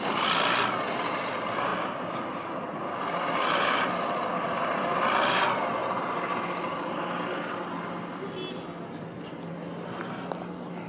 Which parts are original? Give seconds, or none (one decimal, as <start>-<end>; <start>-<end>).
0.0-10.9